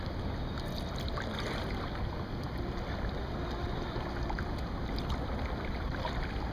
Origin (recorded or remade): recorded